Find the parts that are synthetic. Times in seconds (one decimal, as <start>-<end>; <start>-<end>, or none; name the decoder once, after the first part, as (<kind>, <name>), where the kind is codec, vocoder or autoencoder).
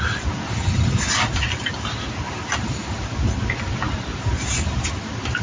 none